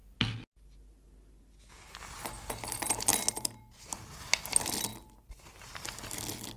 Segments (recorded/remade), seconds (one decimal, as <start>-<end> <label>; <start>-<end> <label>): 0.0-3.1 recorded; 3.1-3.6 remade; 3.6-6.6 recorded

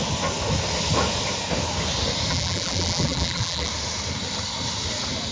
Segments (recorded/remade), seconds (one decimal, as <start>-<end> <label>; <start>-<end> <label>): 0.0-2.3 recorded; 2.3-3.7 remade; 3.7-5.3 recorded